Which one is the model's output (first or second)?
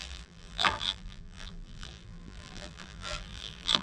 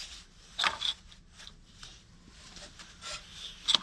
first